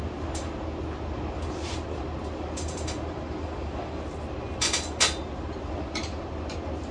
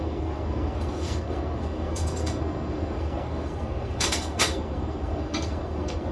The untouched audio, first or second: first